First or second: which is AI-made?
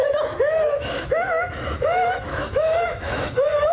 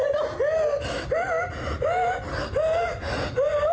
first